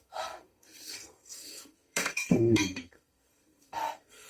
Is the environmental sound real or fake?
fake